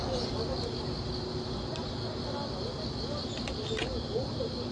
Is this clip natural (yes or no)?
yes